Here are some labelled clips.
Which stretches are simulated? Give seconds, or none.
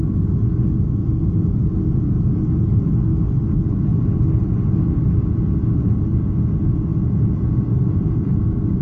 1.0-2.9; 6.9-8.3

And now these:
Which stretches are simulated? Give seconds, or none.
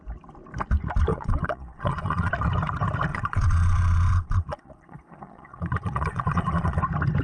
1.1-2.3; 3.1-6.8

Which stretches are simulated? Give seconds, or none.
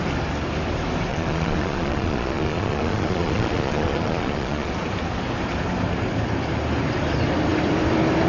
1.1-4.7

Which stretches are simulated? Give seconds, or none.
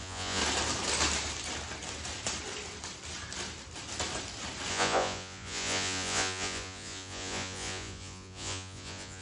0.0-0.4; 4.7-9.2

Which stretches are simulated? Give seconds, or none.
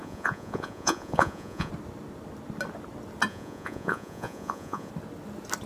0.0-1.7; 3.3-4.9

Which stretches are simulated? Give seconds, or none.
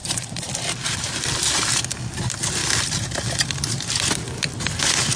0.0-0.5